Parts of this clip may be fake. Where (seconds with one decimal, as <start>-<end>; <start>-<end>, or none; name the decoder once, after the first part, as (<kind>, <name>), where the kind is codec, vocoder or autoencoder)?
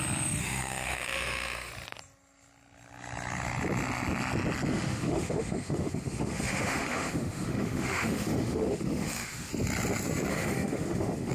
0.4-1.7 (autoencoder, DAC-VAE); 4.7-9.5; 10.3-11.3